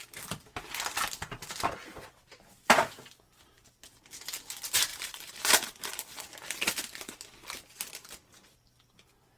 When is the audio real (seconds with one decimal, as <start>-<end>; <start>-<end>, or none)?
0.0-1.9; 3.0-4.9; 6.3-9.4